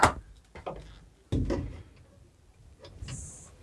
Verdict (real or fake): real